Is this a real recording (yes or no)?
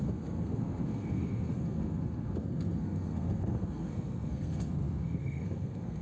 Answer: no